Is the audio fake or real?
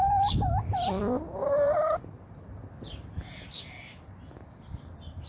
fake